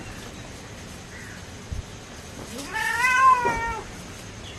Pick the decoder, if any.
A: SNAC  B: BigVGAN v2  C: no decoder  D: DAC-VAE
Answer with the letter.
C